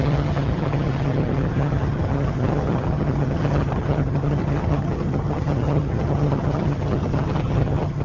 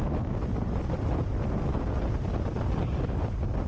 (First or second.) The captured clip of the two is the second